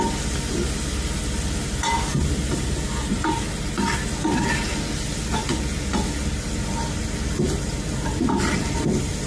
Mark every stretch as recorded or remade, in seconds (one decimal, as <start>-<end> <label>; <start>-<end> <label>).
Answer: 0.0-9.3 recorded